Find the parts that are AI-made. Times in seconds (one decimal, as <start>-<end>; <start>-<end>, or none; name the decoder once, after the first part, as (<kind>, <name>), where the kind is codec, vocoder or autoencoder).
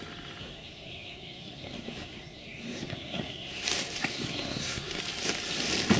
0.4-3.6 (codec, SNAC); 4.1-5.0